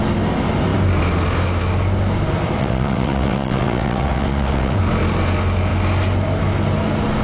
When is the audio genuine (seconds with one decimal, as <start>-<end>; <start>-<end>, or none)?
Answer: 0.0-2.6; 4.8-7.2